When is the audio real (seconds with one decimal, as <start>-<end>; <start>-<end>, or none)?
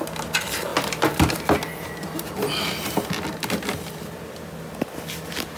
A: 0.0-5.6